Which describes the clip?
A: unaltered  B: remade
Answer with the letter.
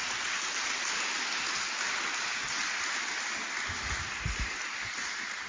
A